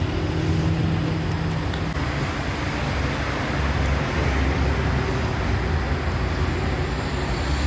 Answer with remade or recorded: recorded